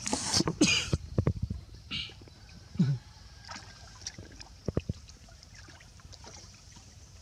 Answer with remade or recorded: remade